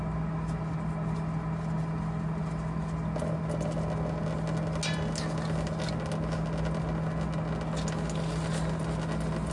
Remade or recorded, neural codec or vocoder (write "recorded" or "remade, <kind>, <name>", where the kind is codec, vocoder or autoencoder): recorded